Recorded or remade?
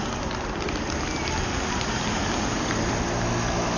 recorded